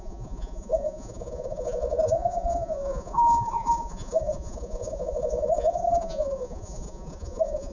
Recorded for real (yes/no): no